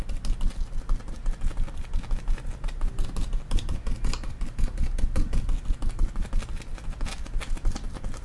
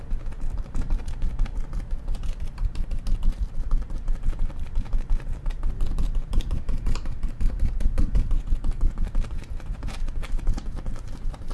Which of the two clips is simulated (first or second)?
second